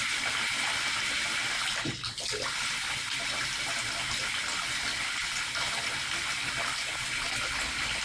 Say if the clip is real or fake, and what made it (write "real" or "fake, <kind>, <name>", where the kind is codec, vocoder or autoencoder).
real